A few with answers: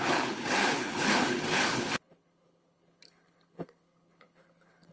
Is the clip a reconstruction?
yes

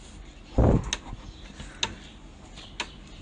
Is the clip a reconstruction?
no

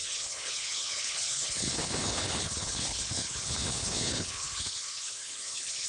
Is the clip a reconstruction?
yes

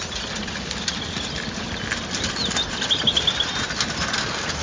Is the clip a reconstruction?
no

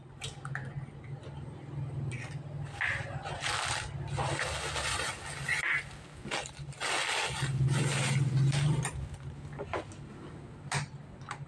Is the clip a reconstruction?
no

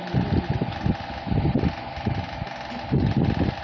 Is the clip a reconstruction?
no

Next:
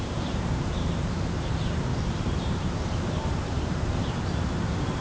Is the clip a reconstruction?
yes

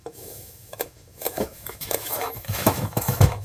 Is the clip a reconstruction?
yes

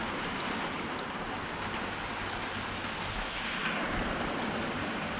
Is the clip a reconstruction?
no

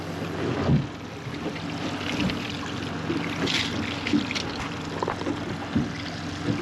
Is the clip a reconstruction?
no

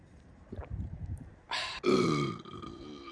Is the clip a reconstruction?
yes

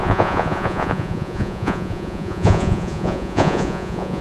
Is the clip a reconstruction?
yes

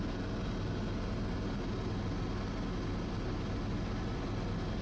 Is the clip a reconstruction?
no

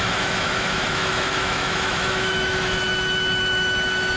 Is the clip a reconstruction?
yes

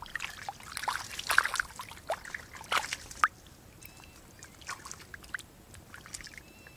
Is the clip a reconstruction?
no